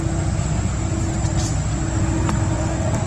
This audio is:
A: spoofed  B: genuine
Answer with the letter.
B